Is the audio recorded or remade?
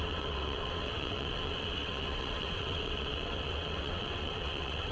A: remade